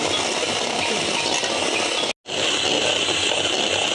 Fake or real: real